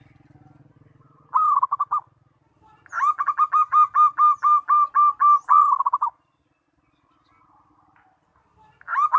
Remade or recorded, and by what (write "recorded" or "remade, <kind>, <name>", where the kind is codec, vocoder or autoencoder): recorded